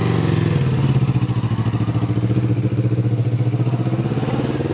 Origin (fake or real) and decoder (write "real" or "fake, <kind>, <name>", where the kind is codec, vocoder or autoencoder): real